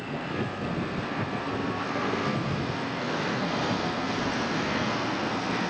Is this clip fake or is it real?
fake